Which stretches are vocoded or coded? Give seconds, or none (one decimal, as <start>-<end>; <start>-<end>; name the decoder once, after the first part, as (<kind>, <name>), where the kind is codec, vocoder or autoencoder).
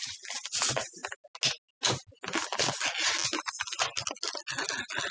none